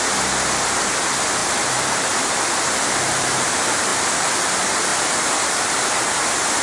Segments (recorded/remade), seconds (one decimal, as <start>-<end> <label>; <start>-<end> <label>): 0.0-1.4 recorded; 1.4-2.4 remade; 2.4-3.9 recorded; 3.9-4.4 remade; 4.4-6.6 recorded